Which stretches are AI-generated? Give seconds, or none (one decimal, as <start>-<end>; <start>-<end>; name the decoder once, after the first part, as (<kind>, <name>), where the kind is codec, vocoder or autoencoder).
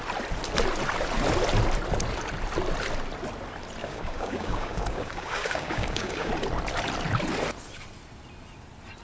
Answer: 3.8-6.3 (codec, DAC)